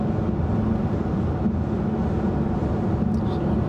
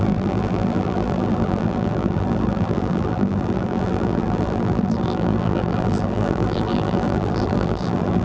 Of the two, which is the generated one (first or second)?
second